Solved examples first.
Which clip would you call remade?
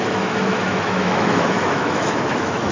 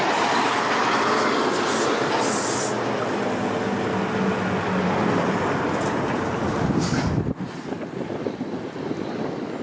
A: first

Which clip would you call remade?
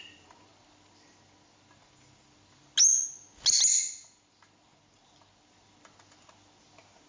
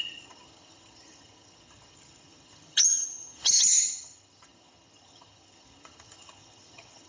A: second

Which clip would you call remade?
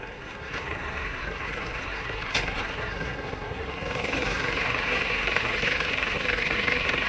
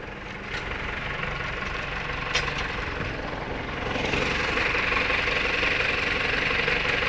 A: first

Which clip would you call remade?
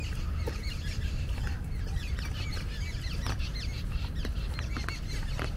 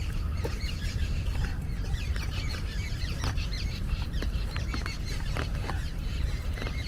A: second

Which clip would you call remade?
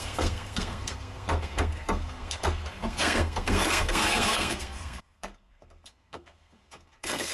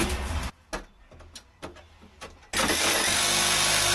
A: first